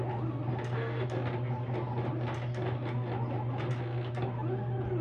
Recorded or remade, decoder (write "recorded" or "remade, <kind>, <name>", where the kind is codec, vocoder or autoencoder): recorded